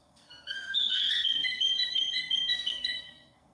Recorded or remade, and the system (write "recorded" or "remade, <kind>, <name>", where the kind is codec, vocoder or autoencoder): remade, codec, SNAC